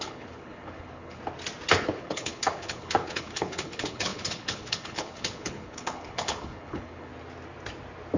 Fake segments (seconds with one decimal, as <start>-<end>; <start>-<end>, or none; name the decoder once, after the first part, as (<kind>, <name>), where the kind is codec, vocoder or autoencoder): 0.0-1.2 (codec, HILCodec); 1.8-7.1